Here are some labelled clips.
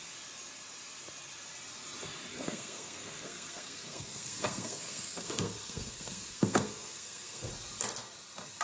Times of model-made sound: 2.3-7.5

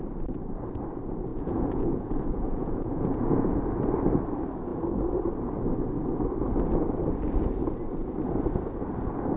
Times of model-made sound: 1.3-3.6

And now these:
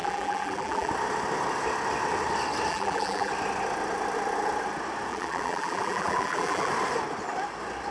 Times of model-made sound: 0.0-0.9; 2.7-3.3; 5.1-6.7